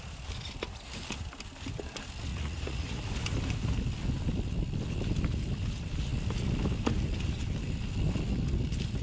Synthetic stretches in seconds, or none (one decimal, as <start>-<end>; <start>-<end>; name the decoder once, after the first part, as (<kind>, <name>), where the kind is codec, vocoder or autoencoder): 2.3-3.0 (vocoder, Vocos)